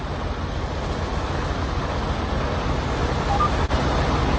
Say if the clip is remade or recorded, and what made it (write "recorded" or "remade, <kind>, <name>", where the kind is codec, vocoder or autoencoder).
recorded